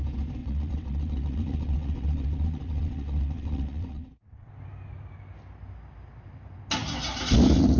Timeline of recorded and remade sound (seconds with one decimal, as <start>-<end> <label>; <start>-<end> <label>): 0.0-0.4 recorded; 0.4-4.5 remade; 4.5-7.8 recorded